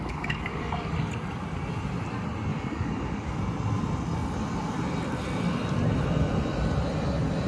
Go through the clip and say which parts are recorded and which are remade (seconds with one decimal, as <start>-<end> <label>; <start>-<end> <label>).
0.0-0.9 remade; 0.9-2.5 recorded; 2.5-3.4 remade; 3.4-7.5 recorded